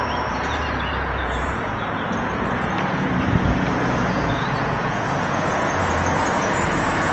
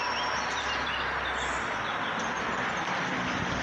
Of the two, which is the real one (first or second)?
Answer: second